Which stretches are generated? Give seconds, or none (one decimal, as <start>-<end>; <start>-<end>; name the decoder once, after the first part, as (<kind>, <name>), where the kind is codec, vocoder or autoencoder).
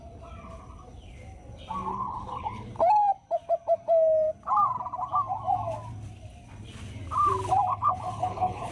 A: 1.9-2.7 (codec, HILCodec); 7.7-8.7